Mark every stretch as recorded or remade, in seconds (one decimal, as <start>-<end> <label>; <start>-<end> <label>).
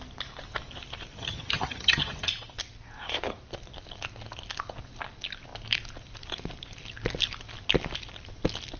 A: 0.0-1.2 recorded; 1.2-2.3 remade; 2.3-8.8 recorded